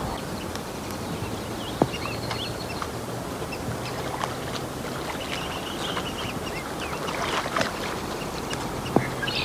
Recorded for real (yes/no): yes